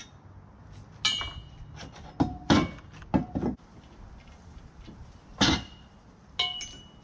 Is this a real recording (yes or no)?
yes